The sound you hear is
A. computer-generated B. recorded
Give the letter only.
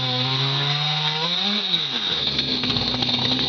A